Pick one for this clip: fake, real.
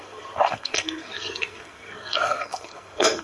fake